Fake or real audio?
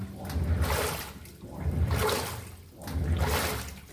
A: real